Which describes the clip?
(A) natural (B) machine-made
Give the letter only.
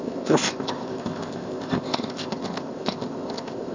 B